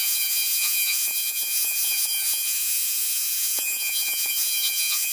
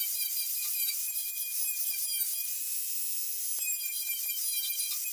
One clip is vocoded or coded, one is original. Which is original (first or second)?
second